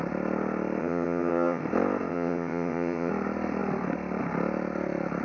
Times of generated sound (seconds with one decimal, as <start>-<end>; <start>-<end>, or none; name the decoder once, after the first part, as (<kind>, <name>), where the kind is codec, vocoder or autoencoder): 0.8-1.6 (vocoder, HiFi-GAN); 2.1-3.1

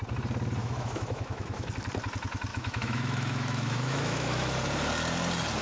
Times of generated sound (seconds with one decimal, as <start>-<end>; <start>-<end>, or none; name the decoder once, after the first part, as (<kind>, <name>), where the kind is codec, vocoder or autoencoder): 0.6-1.7 (autoencoder, DAC-VAE); 2.5-4.5

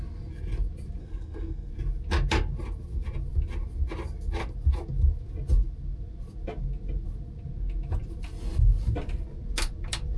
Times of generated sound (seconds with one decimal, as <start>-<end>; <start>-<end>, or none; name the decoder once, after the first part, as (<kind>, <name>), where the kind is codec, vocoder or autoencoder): 1.0-1.7 (codec, SNAC)

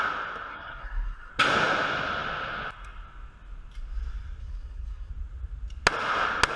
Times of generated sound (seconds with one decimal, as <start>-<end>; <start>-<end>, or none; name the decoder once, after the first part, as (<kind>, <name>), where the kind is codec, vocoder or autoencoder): 0.5-1.3 (codec, SNAC); 4.4-5.1

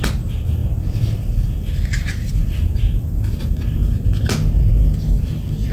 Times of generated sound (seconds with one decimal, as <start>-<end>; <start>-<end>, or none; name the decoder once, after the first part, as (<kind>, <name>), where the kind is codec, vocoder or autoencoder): 0.6-3.4 (vocoder, BigVGAN v2)

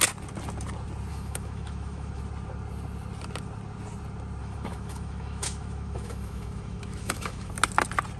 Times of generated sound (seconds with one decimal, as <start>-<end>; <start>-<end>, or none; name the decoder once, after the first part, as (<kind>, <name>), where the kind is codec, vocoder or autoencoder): 1.1-2.2 (autoencoder, DAC-VAE); 4.4-7.5